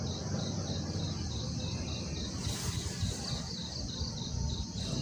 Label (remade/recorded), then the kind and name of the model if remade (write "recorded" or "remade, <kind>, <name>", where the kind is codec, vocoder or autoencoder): recorded